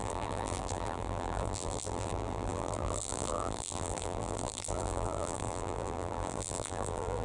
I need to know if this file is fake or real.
fake